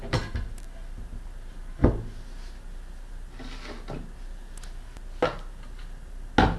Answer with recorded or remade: recorded